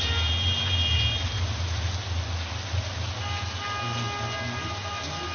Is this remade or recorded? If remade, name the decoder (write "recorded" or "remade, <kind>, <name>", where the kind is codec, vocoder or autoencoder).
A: recorded